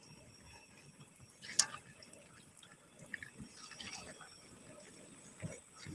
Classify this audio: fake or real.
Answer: real